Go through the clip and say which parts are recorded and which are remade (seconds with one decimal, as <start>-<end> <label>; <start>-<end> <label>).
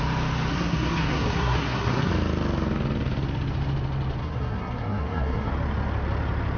0.0-0.5 recorded; 0.5-2.1 remade; 2.1-4.2 recorded; 4.2-5.5 remade; 5.5-6.6 recorded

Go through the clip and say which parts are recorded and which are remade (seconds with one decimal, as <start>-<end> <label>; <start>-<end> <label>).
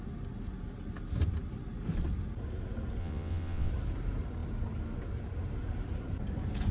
0.0-3.0 recorded; 3.0-3.7 remade; 3.7-6.7 recorded